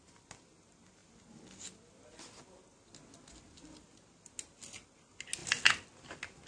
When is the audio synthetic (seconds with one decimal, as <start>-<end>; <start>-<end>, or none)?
none